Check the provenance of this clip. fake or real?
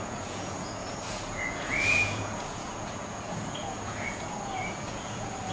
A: fake